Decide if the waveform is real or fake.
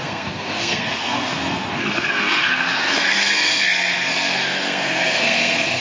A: fake